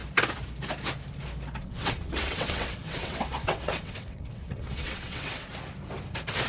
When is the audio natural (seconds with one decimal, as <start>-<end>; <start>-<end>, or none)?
0.0-1.6; 5.5-6.5